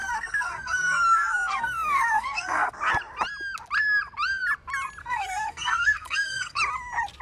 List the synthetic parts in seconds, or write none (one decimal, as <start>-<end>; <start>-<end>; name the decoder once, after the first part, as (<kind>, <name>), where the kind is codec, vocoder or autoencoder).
0.0-2.7 (codec, SNAC); 5.0-6.6